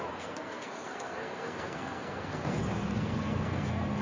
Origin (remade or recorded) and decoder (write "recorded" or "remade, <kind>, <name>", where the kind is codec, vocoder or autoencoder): remade, codec, SNAC